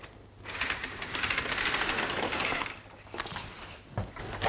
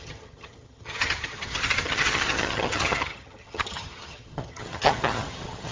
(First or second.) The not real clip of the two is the second